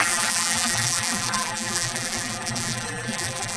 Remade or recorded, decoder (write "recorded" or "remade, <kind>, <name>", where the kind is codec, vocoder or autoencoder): remade, vocoder, BigVGAN v2